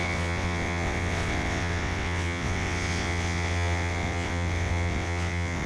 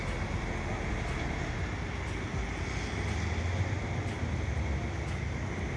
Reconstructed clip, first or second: first